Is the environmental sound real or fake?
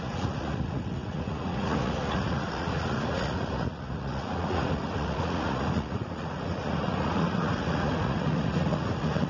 fake